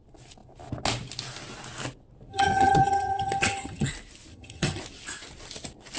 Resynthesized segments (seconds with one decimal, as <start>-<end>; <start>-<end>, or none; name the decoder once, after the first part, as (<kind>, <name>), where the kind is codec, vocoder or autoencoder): 2.3-3.9 (vocoder, HiFi-GAN); 4.3-4.8